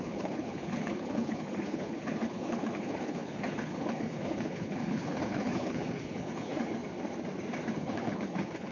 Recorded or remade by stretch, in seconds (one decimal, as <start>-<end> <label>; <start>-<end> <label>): 0.0-6.8 remade; 6.8-7.7 recorded; 7.7-8.7 remade